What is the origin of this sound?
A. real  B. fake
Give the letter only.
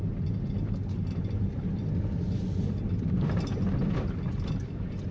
A